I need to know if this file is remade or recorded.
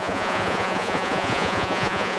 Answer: remade